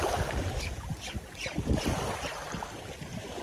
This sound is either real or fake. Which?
real